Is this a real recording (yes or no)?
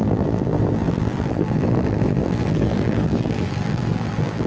no